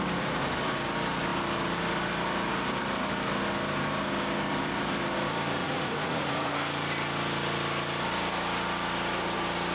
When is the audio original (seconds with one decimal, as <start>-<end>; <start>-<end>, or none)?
0.0-5.6; 6.5-9.7